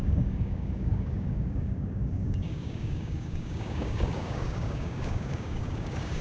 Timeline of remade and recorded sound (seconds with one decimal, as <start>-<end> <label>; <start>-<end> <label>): 0.0-6.2 remade